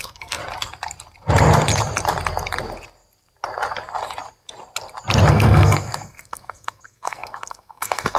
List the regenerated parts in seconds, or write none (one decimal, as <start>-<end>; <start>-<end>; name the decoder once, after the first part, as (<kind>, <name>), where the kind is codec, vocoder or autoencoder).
0.0-0.4 (codec, SNAC); 5.3-8.2